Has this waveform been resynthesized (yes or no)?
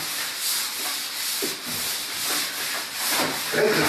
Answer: no